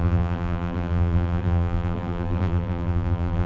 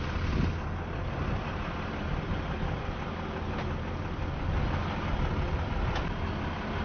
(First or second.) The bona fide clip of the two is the second